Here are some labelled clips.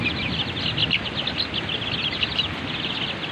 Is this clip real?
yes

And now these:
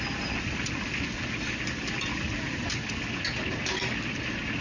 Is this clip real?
yes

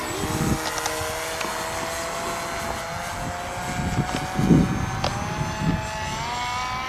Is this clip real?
yes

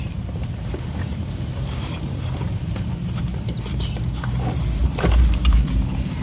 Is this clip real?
no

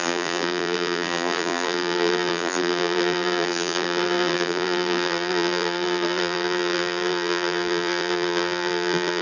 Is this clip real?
no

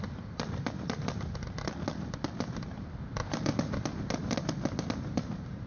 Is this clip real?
yes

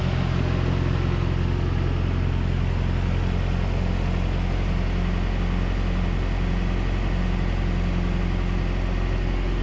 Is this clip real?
yes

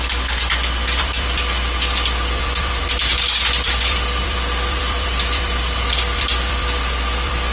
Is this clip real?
no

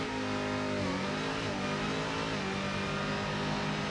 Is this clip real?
yes